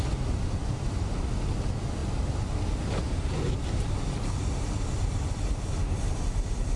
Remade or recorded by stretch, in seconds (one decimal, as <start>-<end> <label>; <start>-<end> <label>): 0.0-6.8 recorded